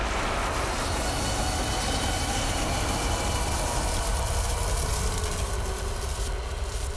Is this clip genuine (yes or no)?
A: yes